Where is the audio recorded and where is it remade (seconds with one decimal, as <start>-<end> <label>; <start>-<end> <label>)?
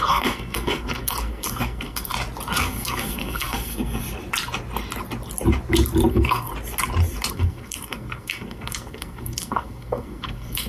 0.0-2.1 remade; 2.1-2.6 recorded; 2.6-4.0 remade; 4.0-6.1 recorded; 6.1-6.5 remade; 6.5-7.3 recorded; 7.3-10.7 remade